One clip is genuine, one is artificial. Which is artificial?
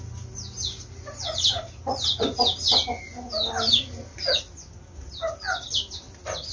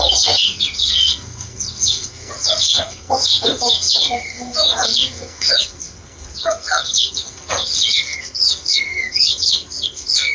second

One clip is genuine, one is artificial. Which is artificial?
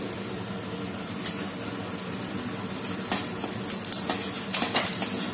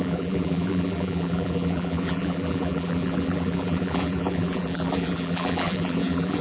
second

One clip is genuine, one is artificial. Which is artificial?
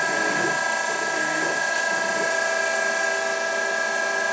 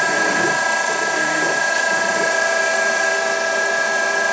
second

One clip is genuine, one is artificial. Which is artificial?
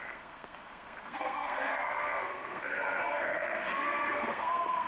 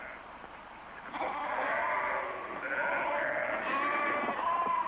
first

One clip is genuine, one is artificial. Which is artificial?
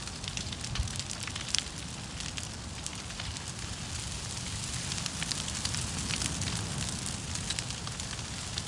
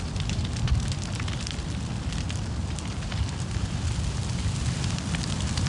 second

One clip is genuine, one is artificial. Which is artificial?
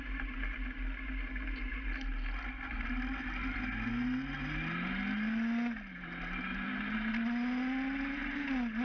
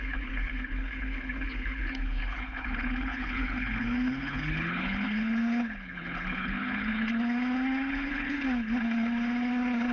second